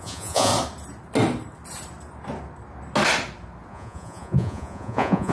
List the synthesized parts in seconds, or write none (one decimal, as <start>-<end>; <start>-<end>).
0.0-0.5; 3.7-5.3